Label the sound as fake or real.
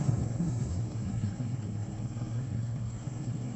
fake